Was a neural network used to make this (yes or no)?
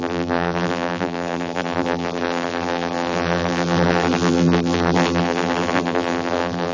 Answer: yes